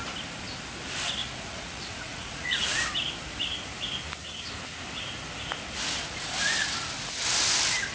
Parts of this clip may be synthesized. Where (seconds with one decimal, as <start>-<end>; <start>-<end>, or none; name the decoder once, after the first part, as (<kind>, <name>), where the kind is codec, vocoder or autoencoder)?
1.2-2.8 (vocoder, Vocos)